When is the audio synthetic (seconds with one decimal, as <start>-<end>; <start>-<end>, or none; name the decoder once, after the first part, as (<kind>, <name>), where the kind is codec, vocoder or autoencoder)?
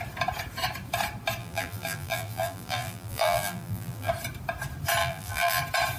1.4-4.1 (vocoder, BigVGAN v2); 5.0-5.6